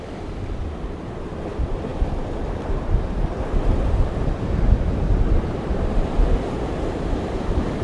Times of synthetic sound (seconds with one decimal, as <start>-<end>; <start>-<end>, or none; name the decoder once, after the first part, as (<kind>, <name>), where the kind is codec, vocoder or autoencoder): none